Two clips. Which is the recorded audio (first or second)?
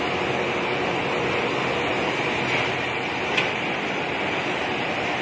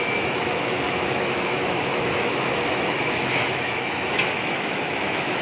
first